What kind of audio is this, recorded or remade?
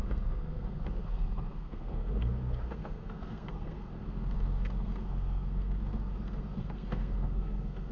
remade